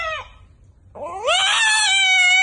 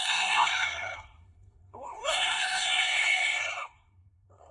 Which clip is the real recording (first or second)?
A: first